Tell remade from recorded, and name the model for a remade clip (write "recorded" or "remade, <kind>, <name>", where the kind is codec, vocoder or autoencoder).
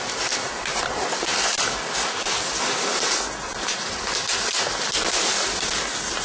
recorded